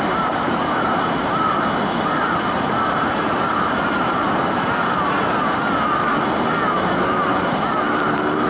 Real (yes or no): no